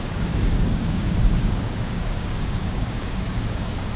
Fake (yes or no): yes